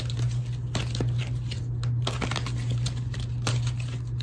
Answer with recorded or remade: recorded